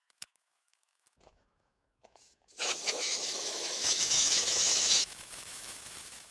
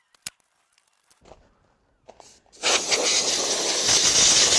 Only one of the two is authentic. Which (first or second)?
second